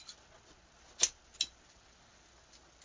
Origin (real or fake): real